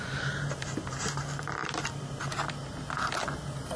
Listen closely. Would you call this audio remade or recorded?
recorded